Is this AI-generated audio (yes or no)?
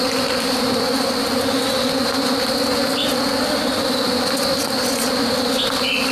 no